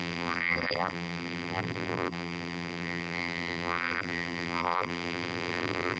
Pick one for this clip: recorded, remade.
remade